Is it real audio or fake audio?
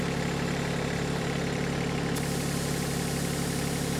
fake